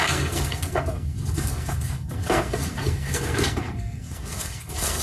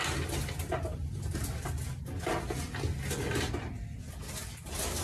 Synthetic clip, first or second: first